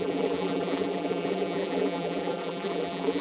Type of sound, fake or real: fake